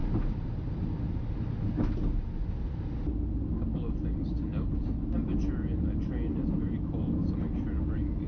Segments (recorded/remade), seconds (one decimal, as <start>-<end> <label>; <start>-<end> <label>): 0.0-8.3 recorded